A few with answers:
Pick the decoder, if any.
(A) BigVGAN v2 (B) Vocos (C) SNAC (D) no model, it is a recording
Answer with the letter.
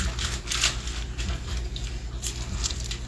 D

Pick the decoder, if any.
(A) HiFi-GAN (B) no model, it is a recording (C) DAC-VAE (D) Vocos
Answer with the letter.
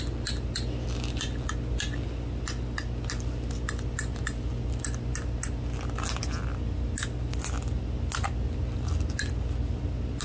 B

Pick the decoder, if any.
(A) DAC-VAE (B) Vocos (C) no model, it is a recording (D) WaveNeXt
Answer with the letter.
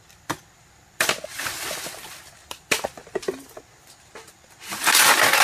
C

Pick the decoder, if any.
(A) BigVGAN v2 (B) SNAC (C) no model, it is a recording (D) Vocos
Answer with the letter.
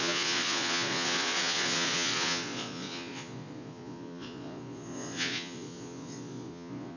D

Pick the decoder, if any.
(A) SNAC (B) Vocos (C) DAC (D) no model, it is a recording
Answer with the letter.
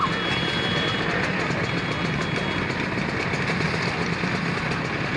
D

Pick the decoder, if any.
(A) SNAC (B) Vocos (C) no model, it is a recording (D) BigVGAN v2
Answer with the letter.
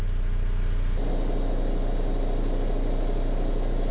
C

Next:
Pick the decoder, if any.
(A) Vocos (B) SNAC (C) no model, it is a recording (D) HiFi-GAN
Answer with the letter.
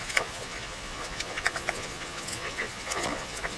A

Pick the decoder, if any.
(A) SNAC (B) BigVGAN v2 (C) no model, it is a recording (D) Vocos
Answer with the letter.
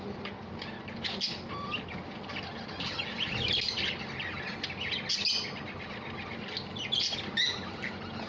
C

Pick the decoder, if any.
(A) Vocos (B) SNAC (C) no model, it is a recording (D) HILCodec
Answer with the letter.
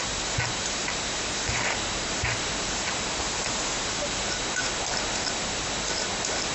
C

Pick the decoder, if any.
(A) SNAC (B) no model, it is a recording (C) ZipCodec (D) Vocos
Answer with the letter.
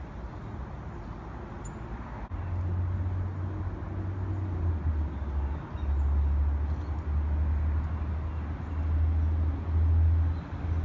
B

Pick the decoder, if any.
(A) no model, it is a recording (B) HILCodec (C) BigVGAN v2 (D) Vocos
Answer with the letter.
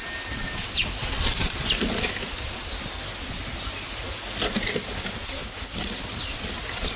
A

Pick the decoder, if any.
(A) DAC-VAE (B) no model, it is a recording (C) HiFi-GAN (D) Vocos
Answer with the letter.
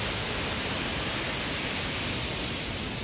B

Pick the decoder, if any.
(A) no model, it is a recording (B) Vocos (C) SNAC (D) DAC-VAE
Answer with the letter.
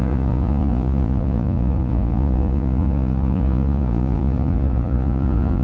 B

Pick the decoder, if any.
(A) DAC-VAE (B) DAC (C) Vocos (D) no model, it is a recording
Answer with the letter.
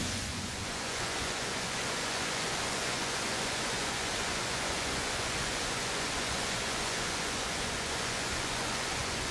C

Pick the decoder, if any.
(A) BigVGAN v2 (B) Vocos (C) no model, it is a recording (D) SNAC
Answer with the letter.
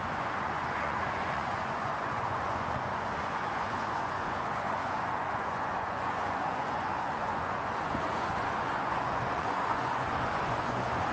B